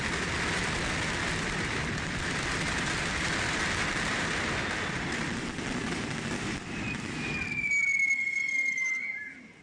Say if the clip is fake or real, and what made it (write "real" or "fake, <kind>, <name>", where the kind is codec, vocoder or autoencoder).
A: real